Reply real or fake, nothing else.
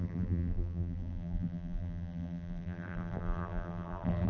fake